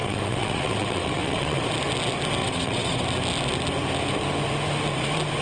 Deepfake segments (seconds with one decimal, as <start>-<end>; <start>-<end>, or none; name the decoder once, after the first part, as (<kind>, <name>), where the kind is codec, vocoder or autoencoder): 0.0-1.6 (vocoder, WaveNeXt); 2.4-3.0